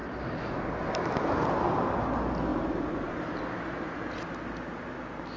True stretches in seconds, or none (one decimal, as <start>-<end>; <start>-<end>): 0.9-2.5; 3.4-5.4